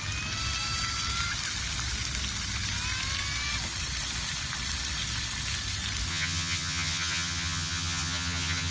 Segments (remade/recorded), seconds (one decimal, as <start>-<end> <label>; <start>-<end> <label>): 0.0-6.1 recorded; 6.1-8.7 remade